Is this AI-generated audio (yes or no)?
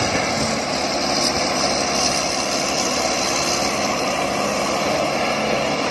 no